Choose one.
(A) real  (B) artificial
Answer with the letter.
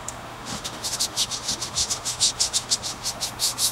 B